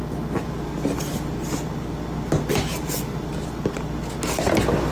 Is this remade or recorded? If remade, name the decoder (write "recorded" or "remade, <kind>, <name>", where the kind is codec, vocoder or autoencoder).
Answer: recorded